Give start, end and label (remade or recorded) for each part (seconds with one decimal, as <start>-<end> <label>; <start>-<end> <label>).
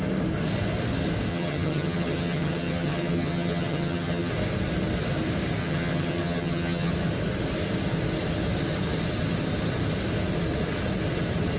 0.0-1.3 recorded; 1.3-4.3 remade; 4.3-5.6 recorded; 5.6-6.9 remade; 6.9-11.6 recorded